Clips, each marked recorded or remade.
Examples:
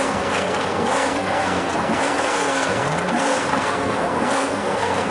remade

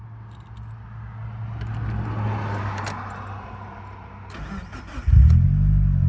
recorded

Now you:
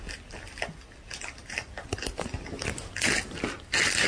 recorded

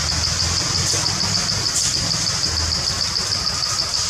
recorded